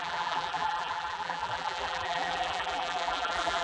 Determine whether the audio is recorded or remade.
remade